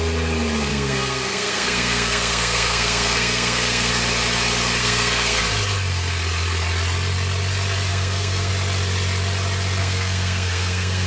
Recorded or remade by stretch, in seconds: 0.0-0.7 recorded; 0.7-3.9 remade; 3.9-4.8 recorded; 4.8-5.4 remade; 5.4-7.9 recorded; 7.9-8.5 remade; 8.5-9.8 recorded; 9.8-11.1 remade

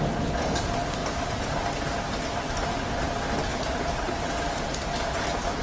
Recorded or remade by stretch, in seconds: 0.0-5.6 recorded